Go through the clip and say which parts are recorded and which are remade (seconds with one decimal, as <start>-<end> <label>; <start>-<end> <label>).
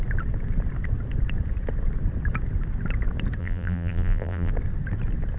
0.0-3.4 recorded; 3.4-4.5 remade; 4.5-5.4 recorded